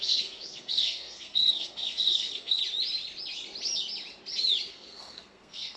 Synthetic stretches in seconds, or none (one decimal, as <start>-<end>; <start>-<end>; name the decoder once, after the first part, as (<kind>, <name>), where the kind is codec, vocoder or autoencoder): 0.0-2.6 (codec, SNAC); 4.7-5.8